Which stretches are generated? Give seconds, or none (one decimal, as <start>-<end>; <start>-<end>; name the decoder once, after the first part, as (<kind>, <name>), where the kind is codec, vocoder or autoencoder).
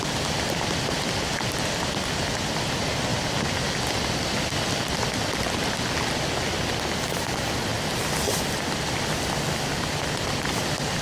none